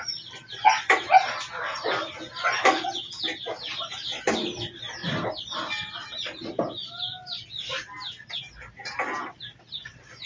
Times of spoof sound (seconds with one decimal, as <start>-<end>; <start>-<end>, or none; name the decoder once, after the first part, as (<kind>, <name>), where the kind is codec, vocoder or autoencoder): none